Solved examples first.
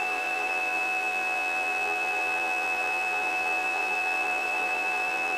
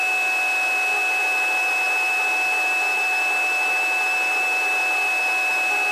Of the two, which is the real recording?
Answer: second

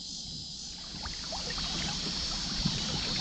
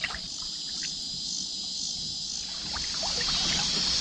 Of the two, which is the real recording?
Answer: second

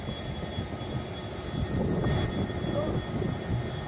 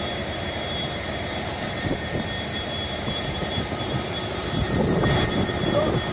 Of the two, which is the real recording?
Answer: first